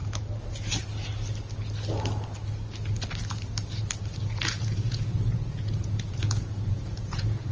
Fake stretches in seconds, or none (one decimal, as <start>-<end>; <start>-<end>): 4.4-7.5